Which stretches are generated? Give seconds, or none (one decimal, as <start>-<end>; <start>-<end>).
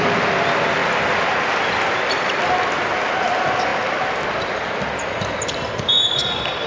none